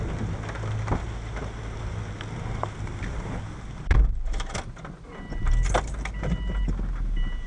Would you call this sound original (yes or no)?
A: yes